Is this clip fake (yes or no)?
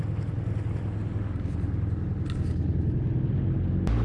no